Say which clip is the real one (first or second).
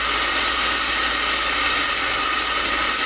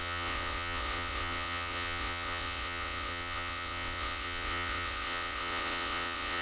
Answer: first